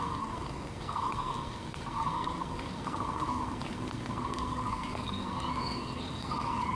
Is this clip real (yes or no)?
no